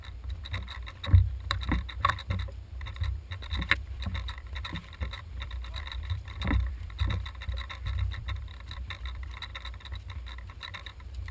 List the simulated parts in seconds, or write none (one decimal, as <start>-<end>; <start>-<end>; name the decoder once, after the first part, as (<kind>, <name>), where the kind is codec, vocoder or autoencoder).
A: 0.0-9.5 (vocoder, BigVGAN v2); 10.5-11.3